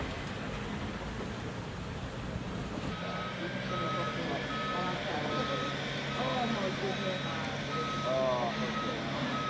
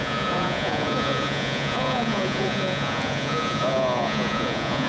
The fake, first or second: second